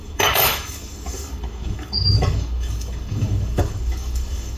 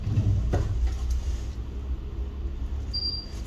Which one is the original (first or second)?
second